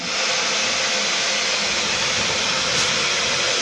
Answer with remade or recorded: recorded